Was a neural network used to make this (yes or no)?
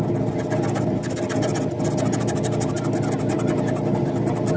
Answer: no